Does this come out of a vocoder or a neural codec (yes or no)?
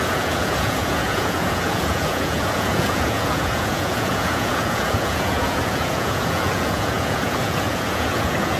yes